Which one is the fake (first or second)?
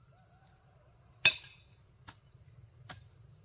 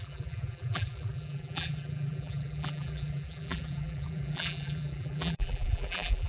second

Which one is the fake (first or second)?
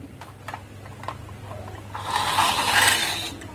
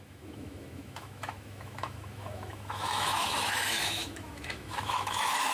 second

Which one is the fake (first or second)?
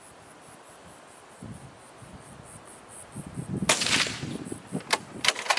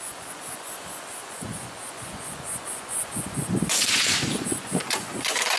second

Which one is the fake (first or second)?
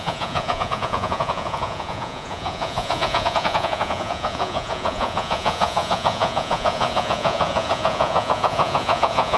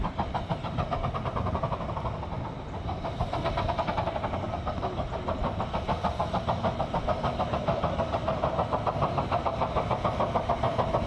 first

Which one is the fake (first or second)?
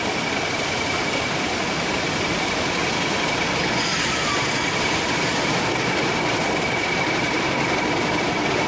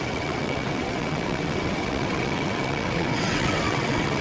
second